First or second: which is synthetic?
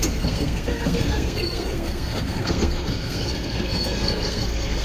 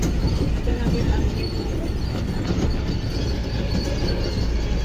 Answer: first